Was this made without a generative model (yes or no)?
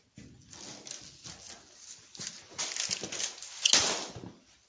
yes